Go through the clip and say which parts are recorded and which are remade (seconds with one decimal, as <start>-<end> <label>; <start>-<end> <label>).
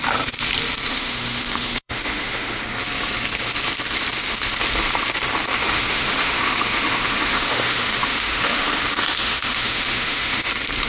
0.0-0.9 recorded; 0.9-2.6 remade; 2.6-5.6 recorded; 5.6-10.5 remade; 10.5-10.9 recorded